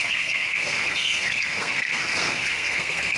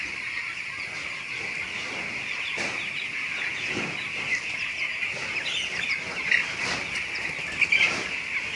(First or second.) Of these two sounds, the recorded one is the second